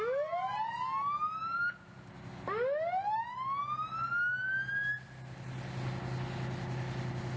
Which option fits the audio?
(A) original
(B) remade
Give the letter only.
A